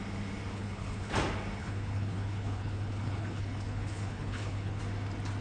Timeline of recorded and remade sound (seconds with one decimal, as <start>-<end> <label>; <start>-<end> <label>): 0.0-0.5 recorded; 0.5-1.1 remade; 1.1-1.6 recorded; 1.6-4.8 remade; 4.8-5.4 recorded